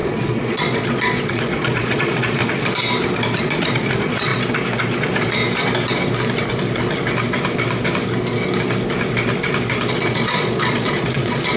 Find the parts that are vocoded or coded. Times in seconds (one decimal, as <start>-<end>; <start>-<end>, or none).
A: 0.0-2.4; 3.4-4.3; 5.0-5.4; 9.9-11.6